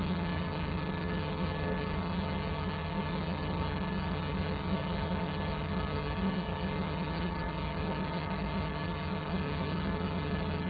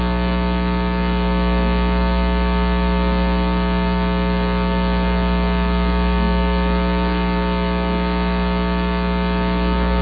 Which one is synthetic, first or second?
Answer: first